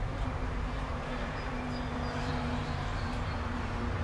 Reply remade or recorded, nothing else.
remade